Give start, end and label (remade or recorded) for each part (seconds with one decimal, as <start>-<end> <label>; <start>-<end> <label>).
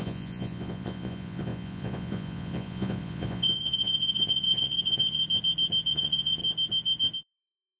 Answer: 0.0-5.2 remade; 5.2-5.9 recorded; 5.9-6.4 remade; 6.4-7.2 recorded; 7.2-7.8 remade